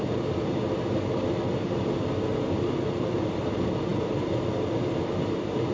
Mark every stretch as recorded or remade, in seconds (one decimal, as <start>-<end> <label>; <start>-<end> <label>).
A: 0.0-5.7 recorded